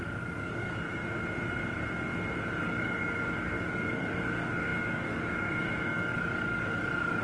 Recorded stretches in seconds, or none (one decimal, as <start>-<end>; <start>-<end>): 1.0-2.6